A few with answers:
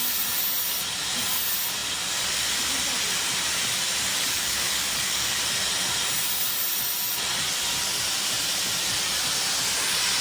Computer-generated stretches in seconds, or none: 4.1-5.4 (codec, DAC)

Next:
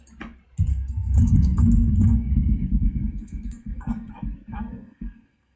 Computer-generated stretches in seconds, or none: 0.7-4.1 (codec, SNAC); 4.5-5.6

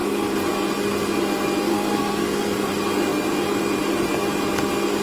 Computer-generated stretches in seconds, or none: 1.7-2.7 (codec, SNAC)

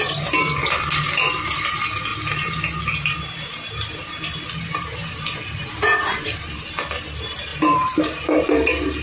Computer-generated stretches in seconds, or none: 7.5-8.5 (vocoder, BigVGAN v2)

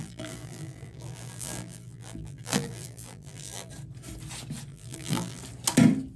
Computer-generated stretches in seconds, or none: 0.0-3.7 (vocoder, BigVGAN v2); 4.7-5.4